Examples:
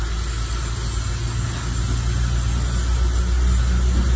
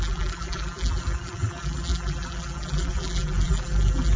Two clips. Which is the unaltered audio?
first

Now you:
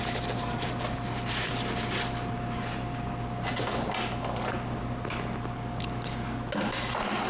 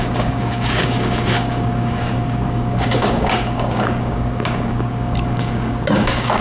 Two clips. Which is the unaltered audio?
first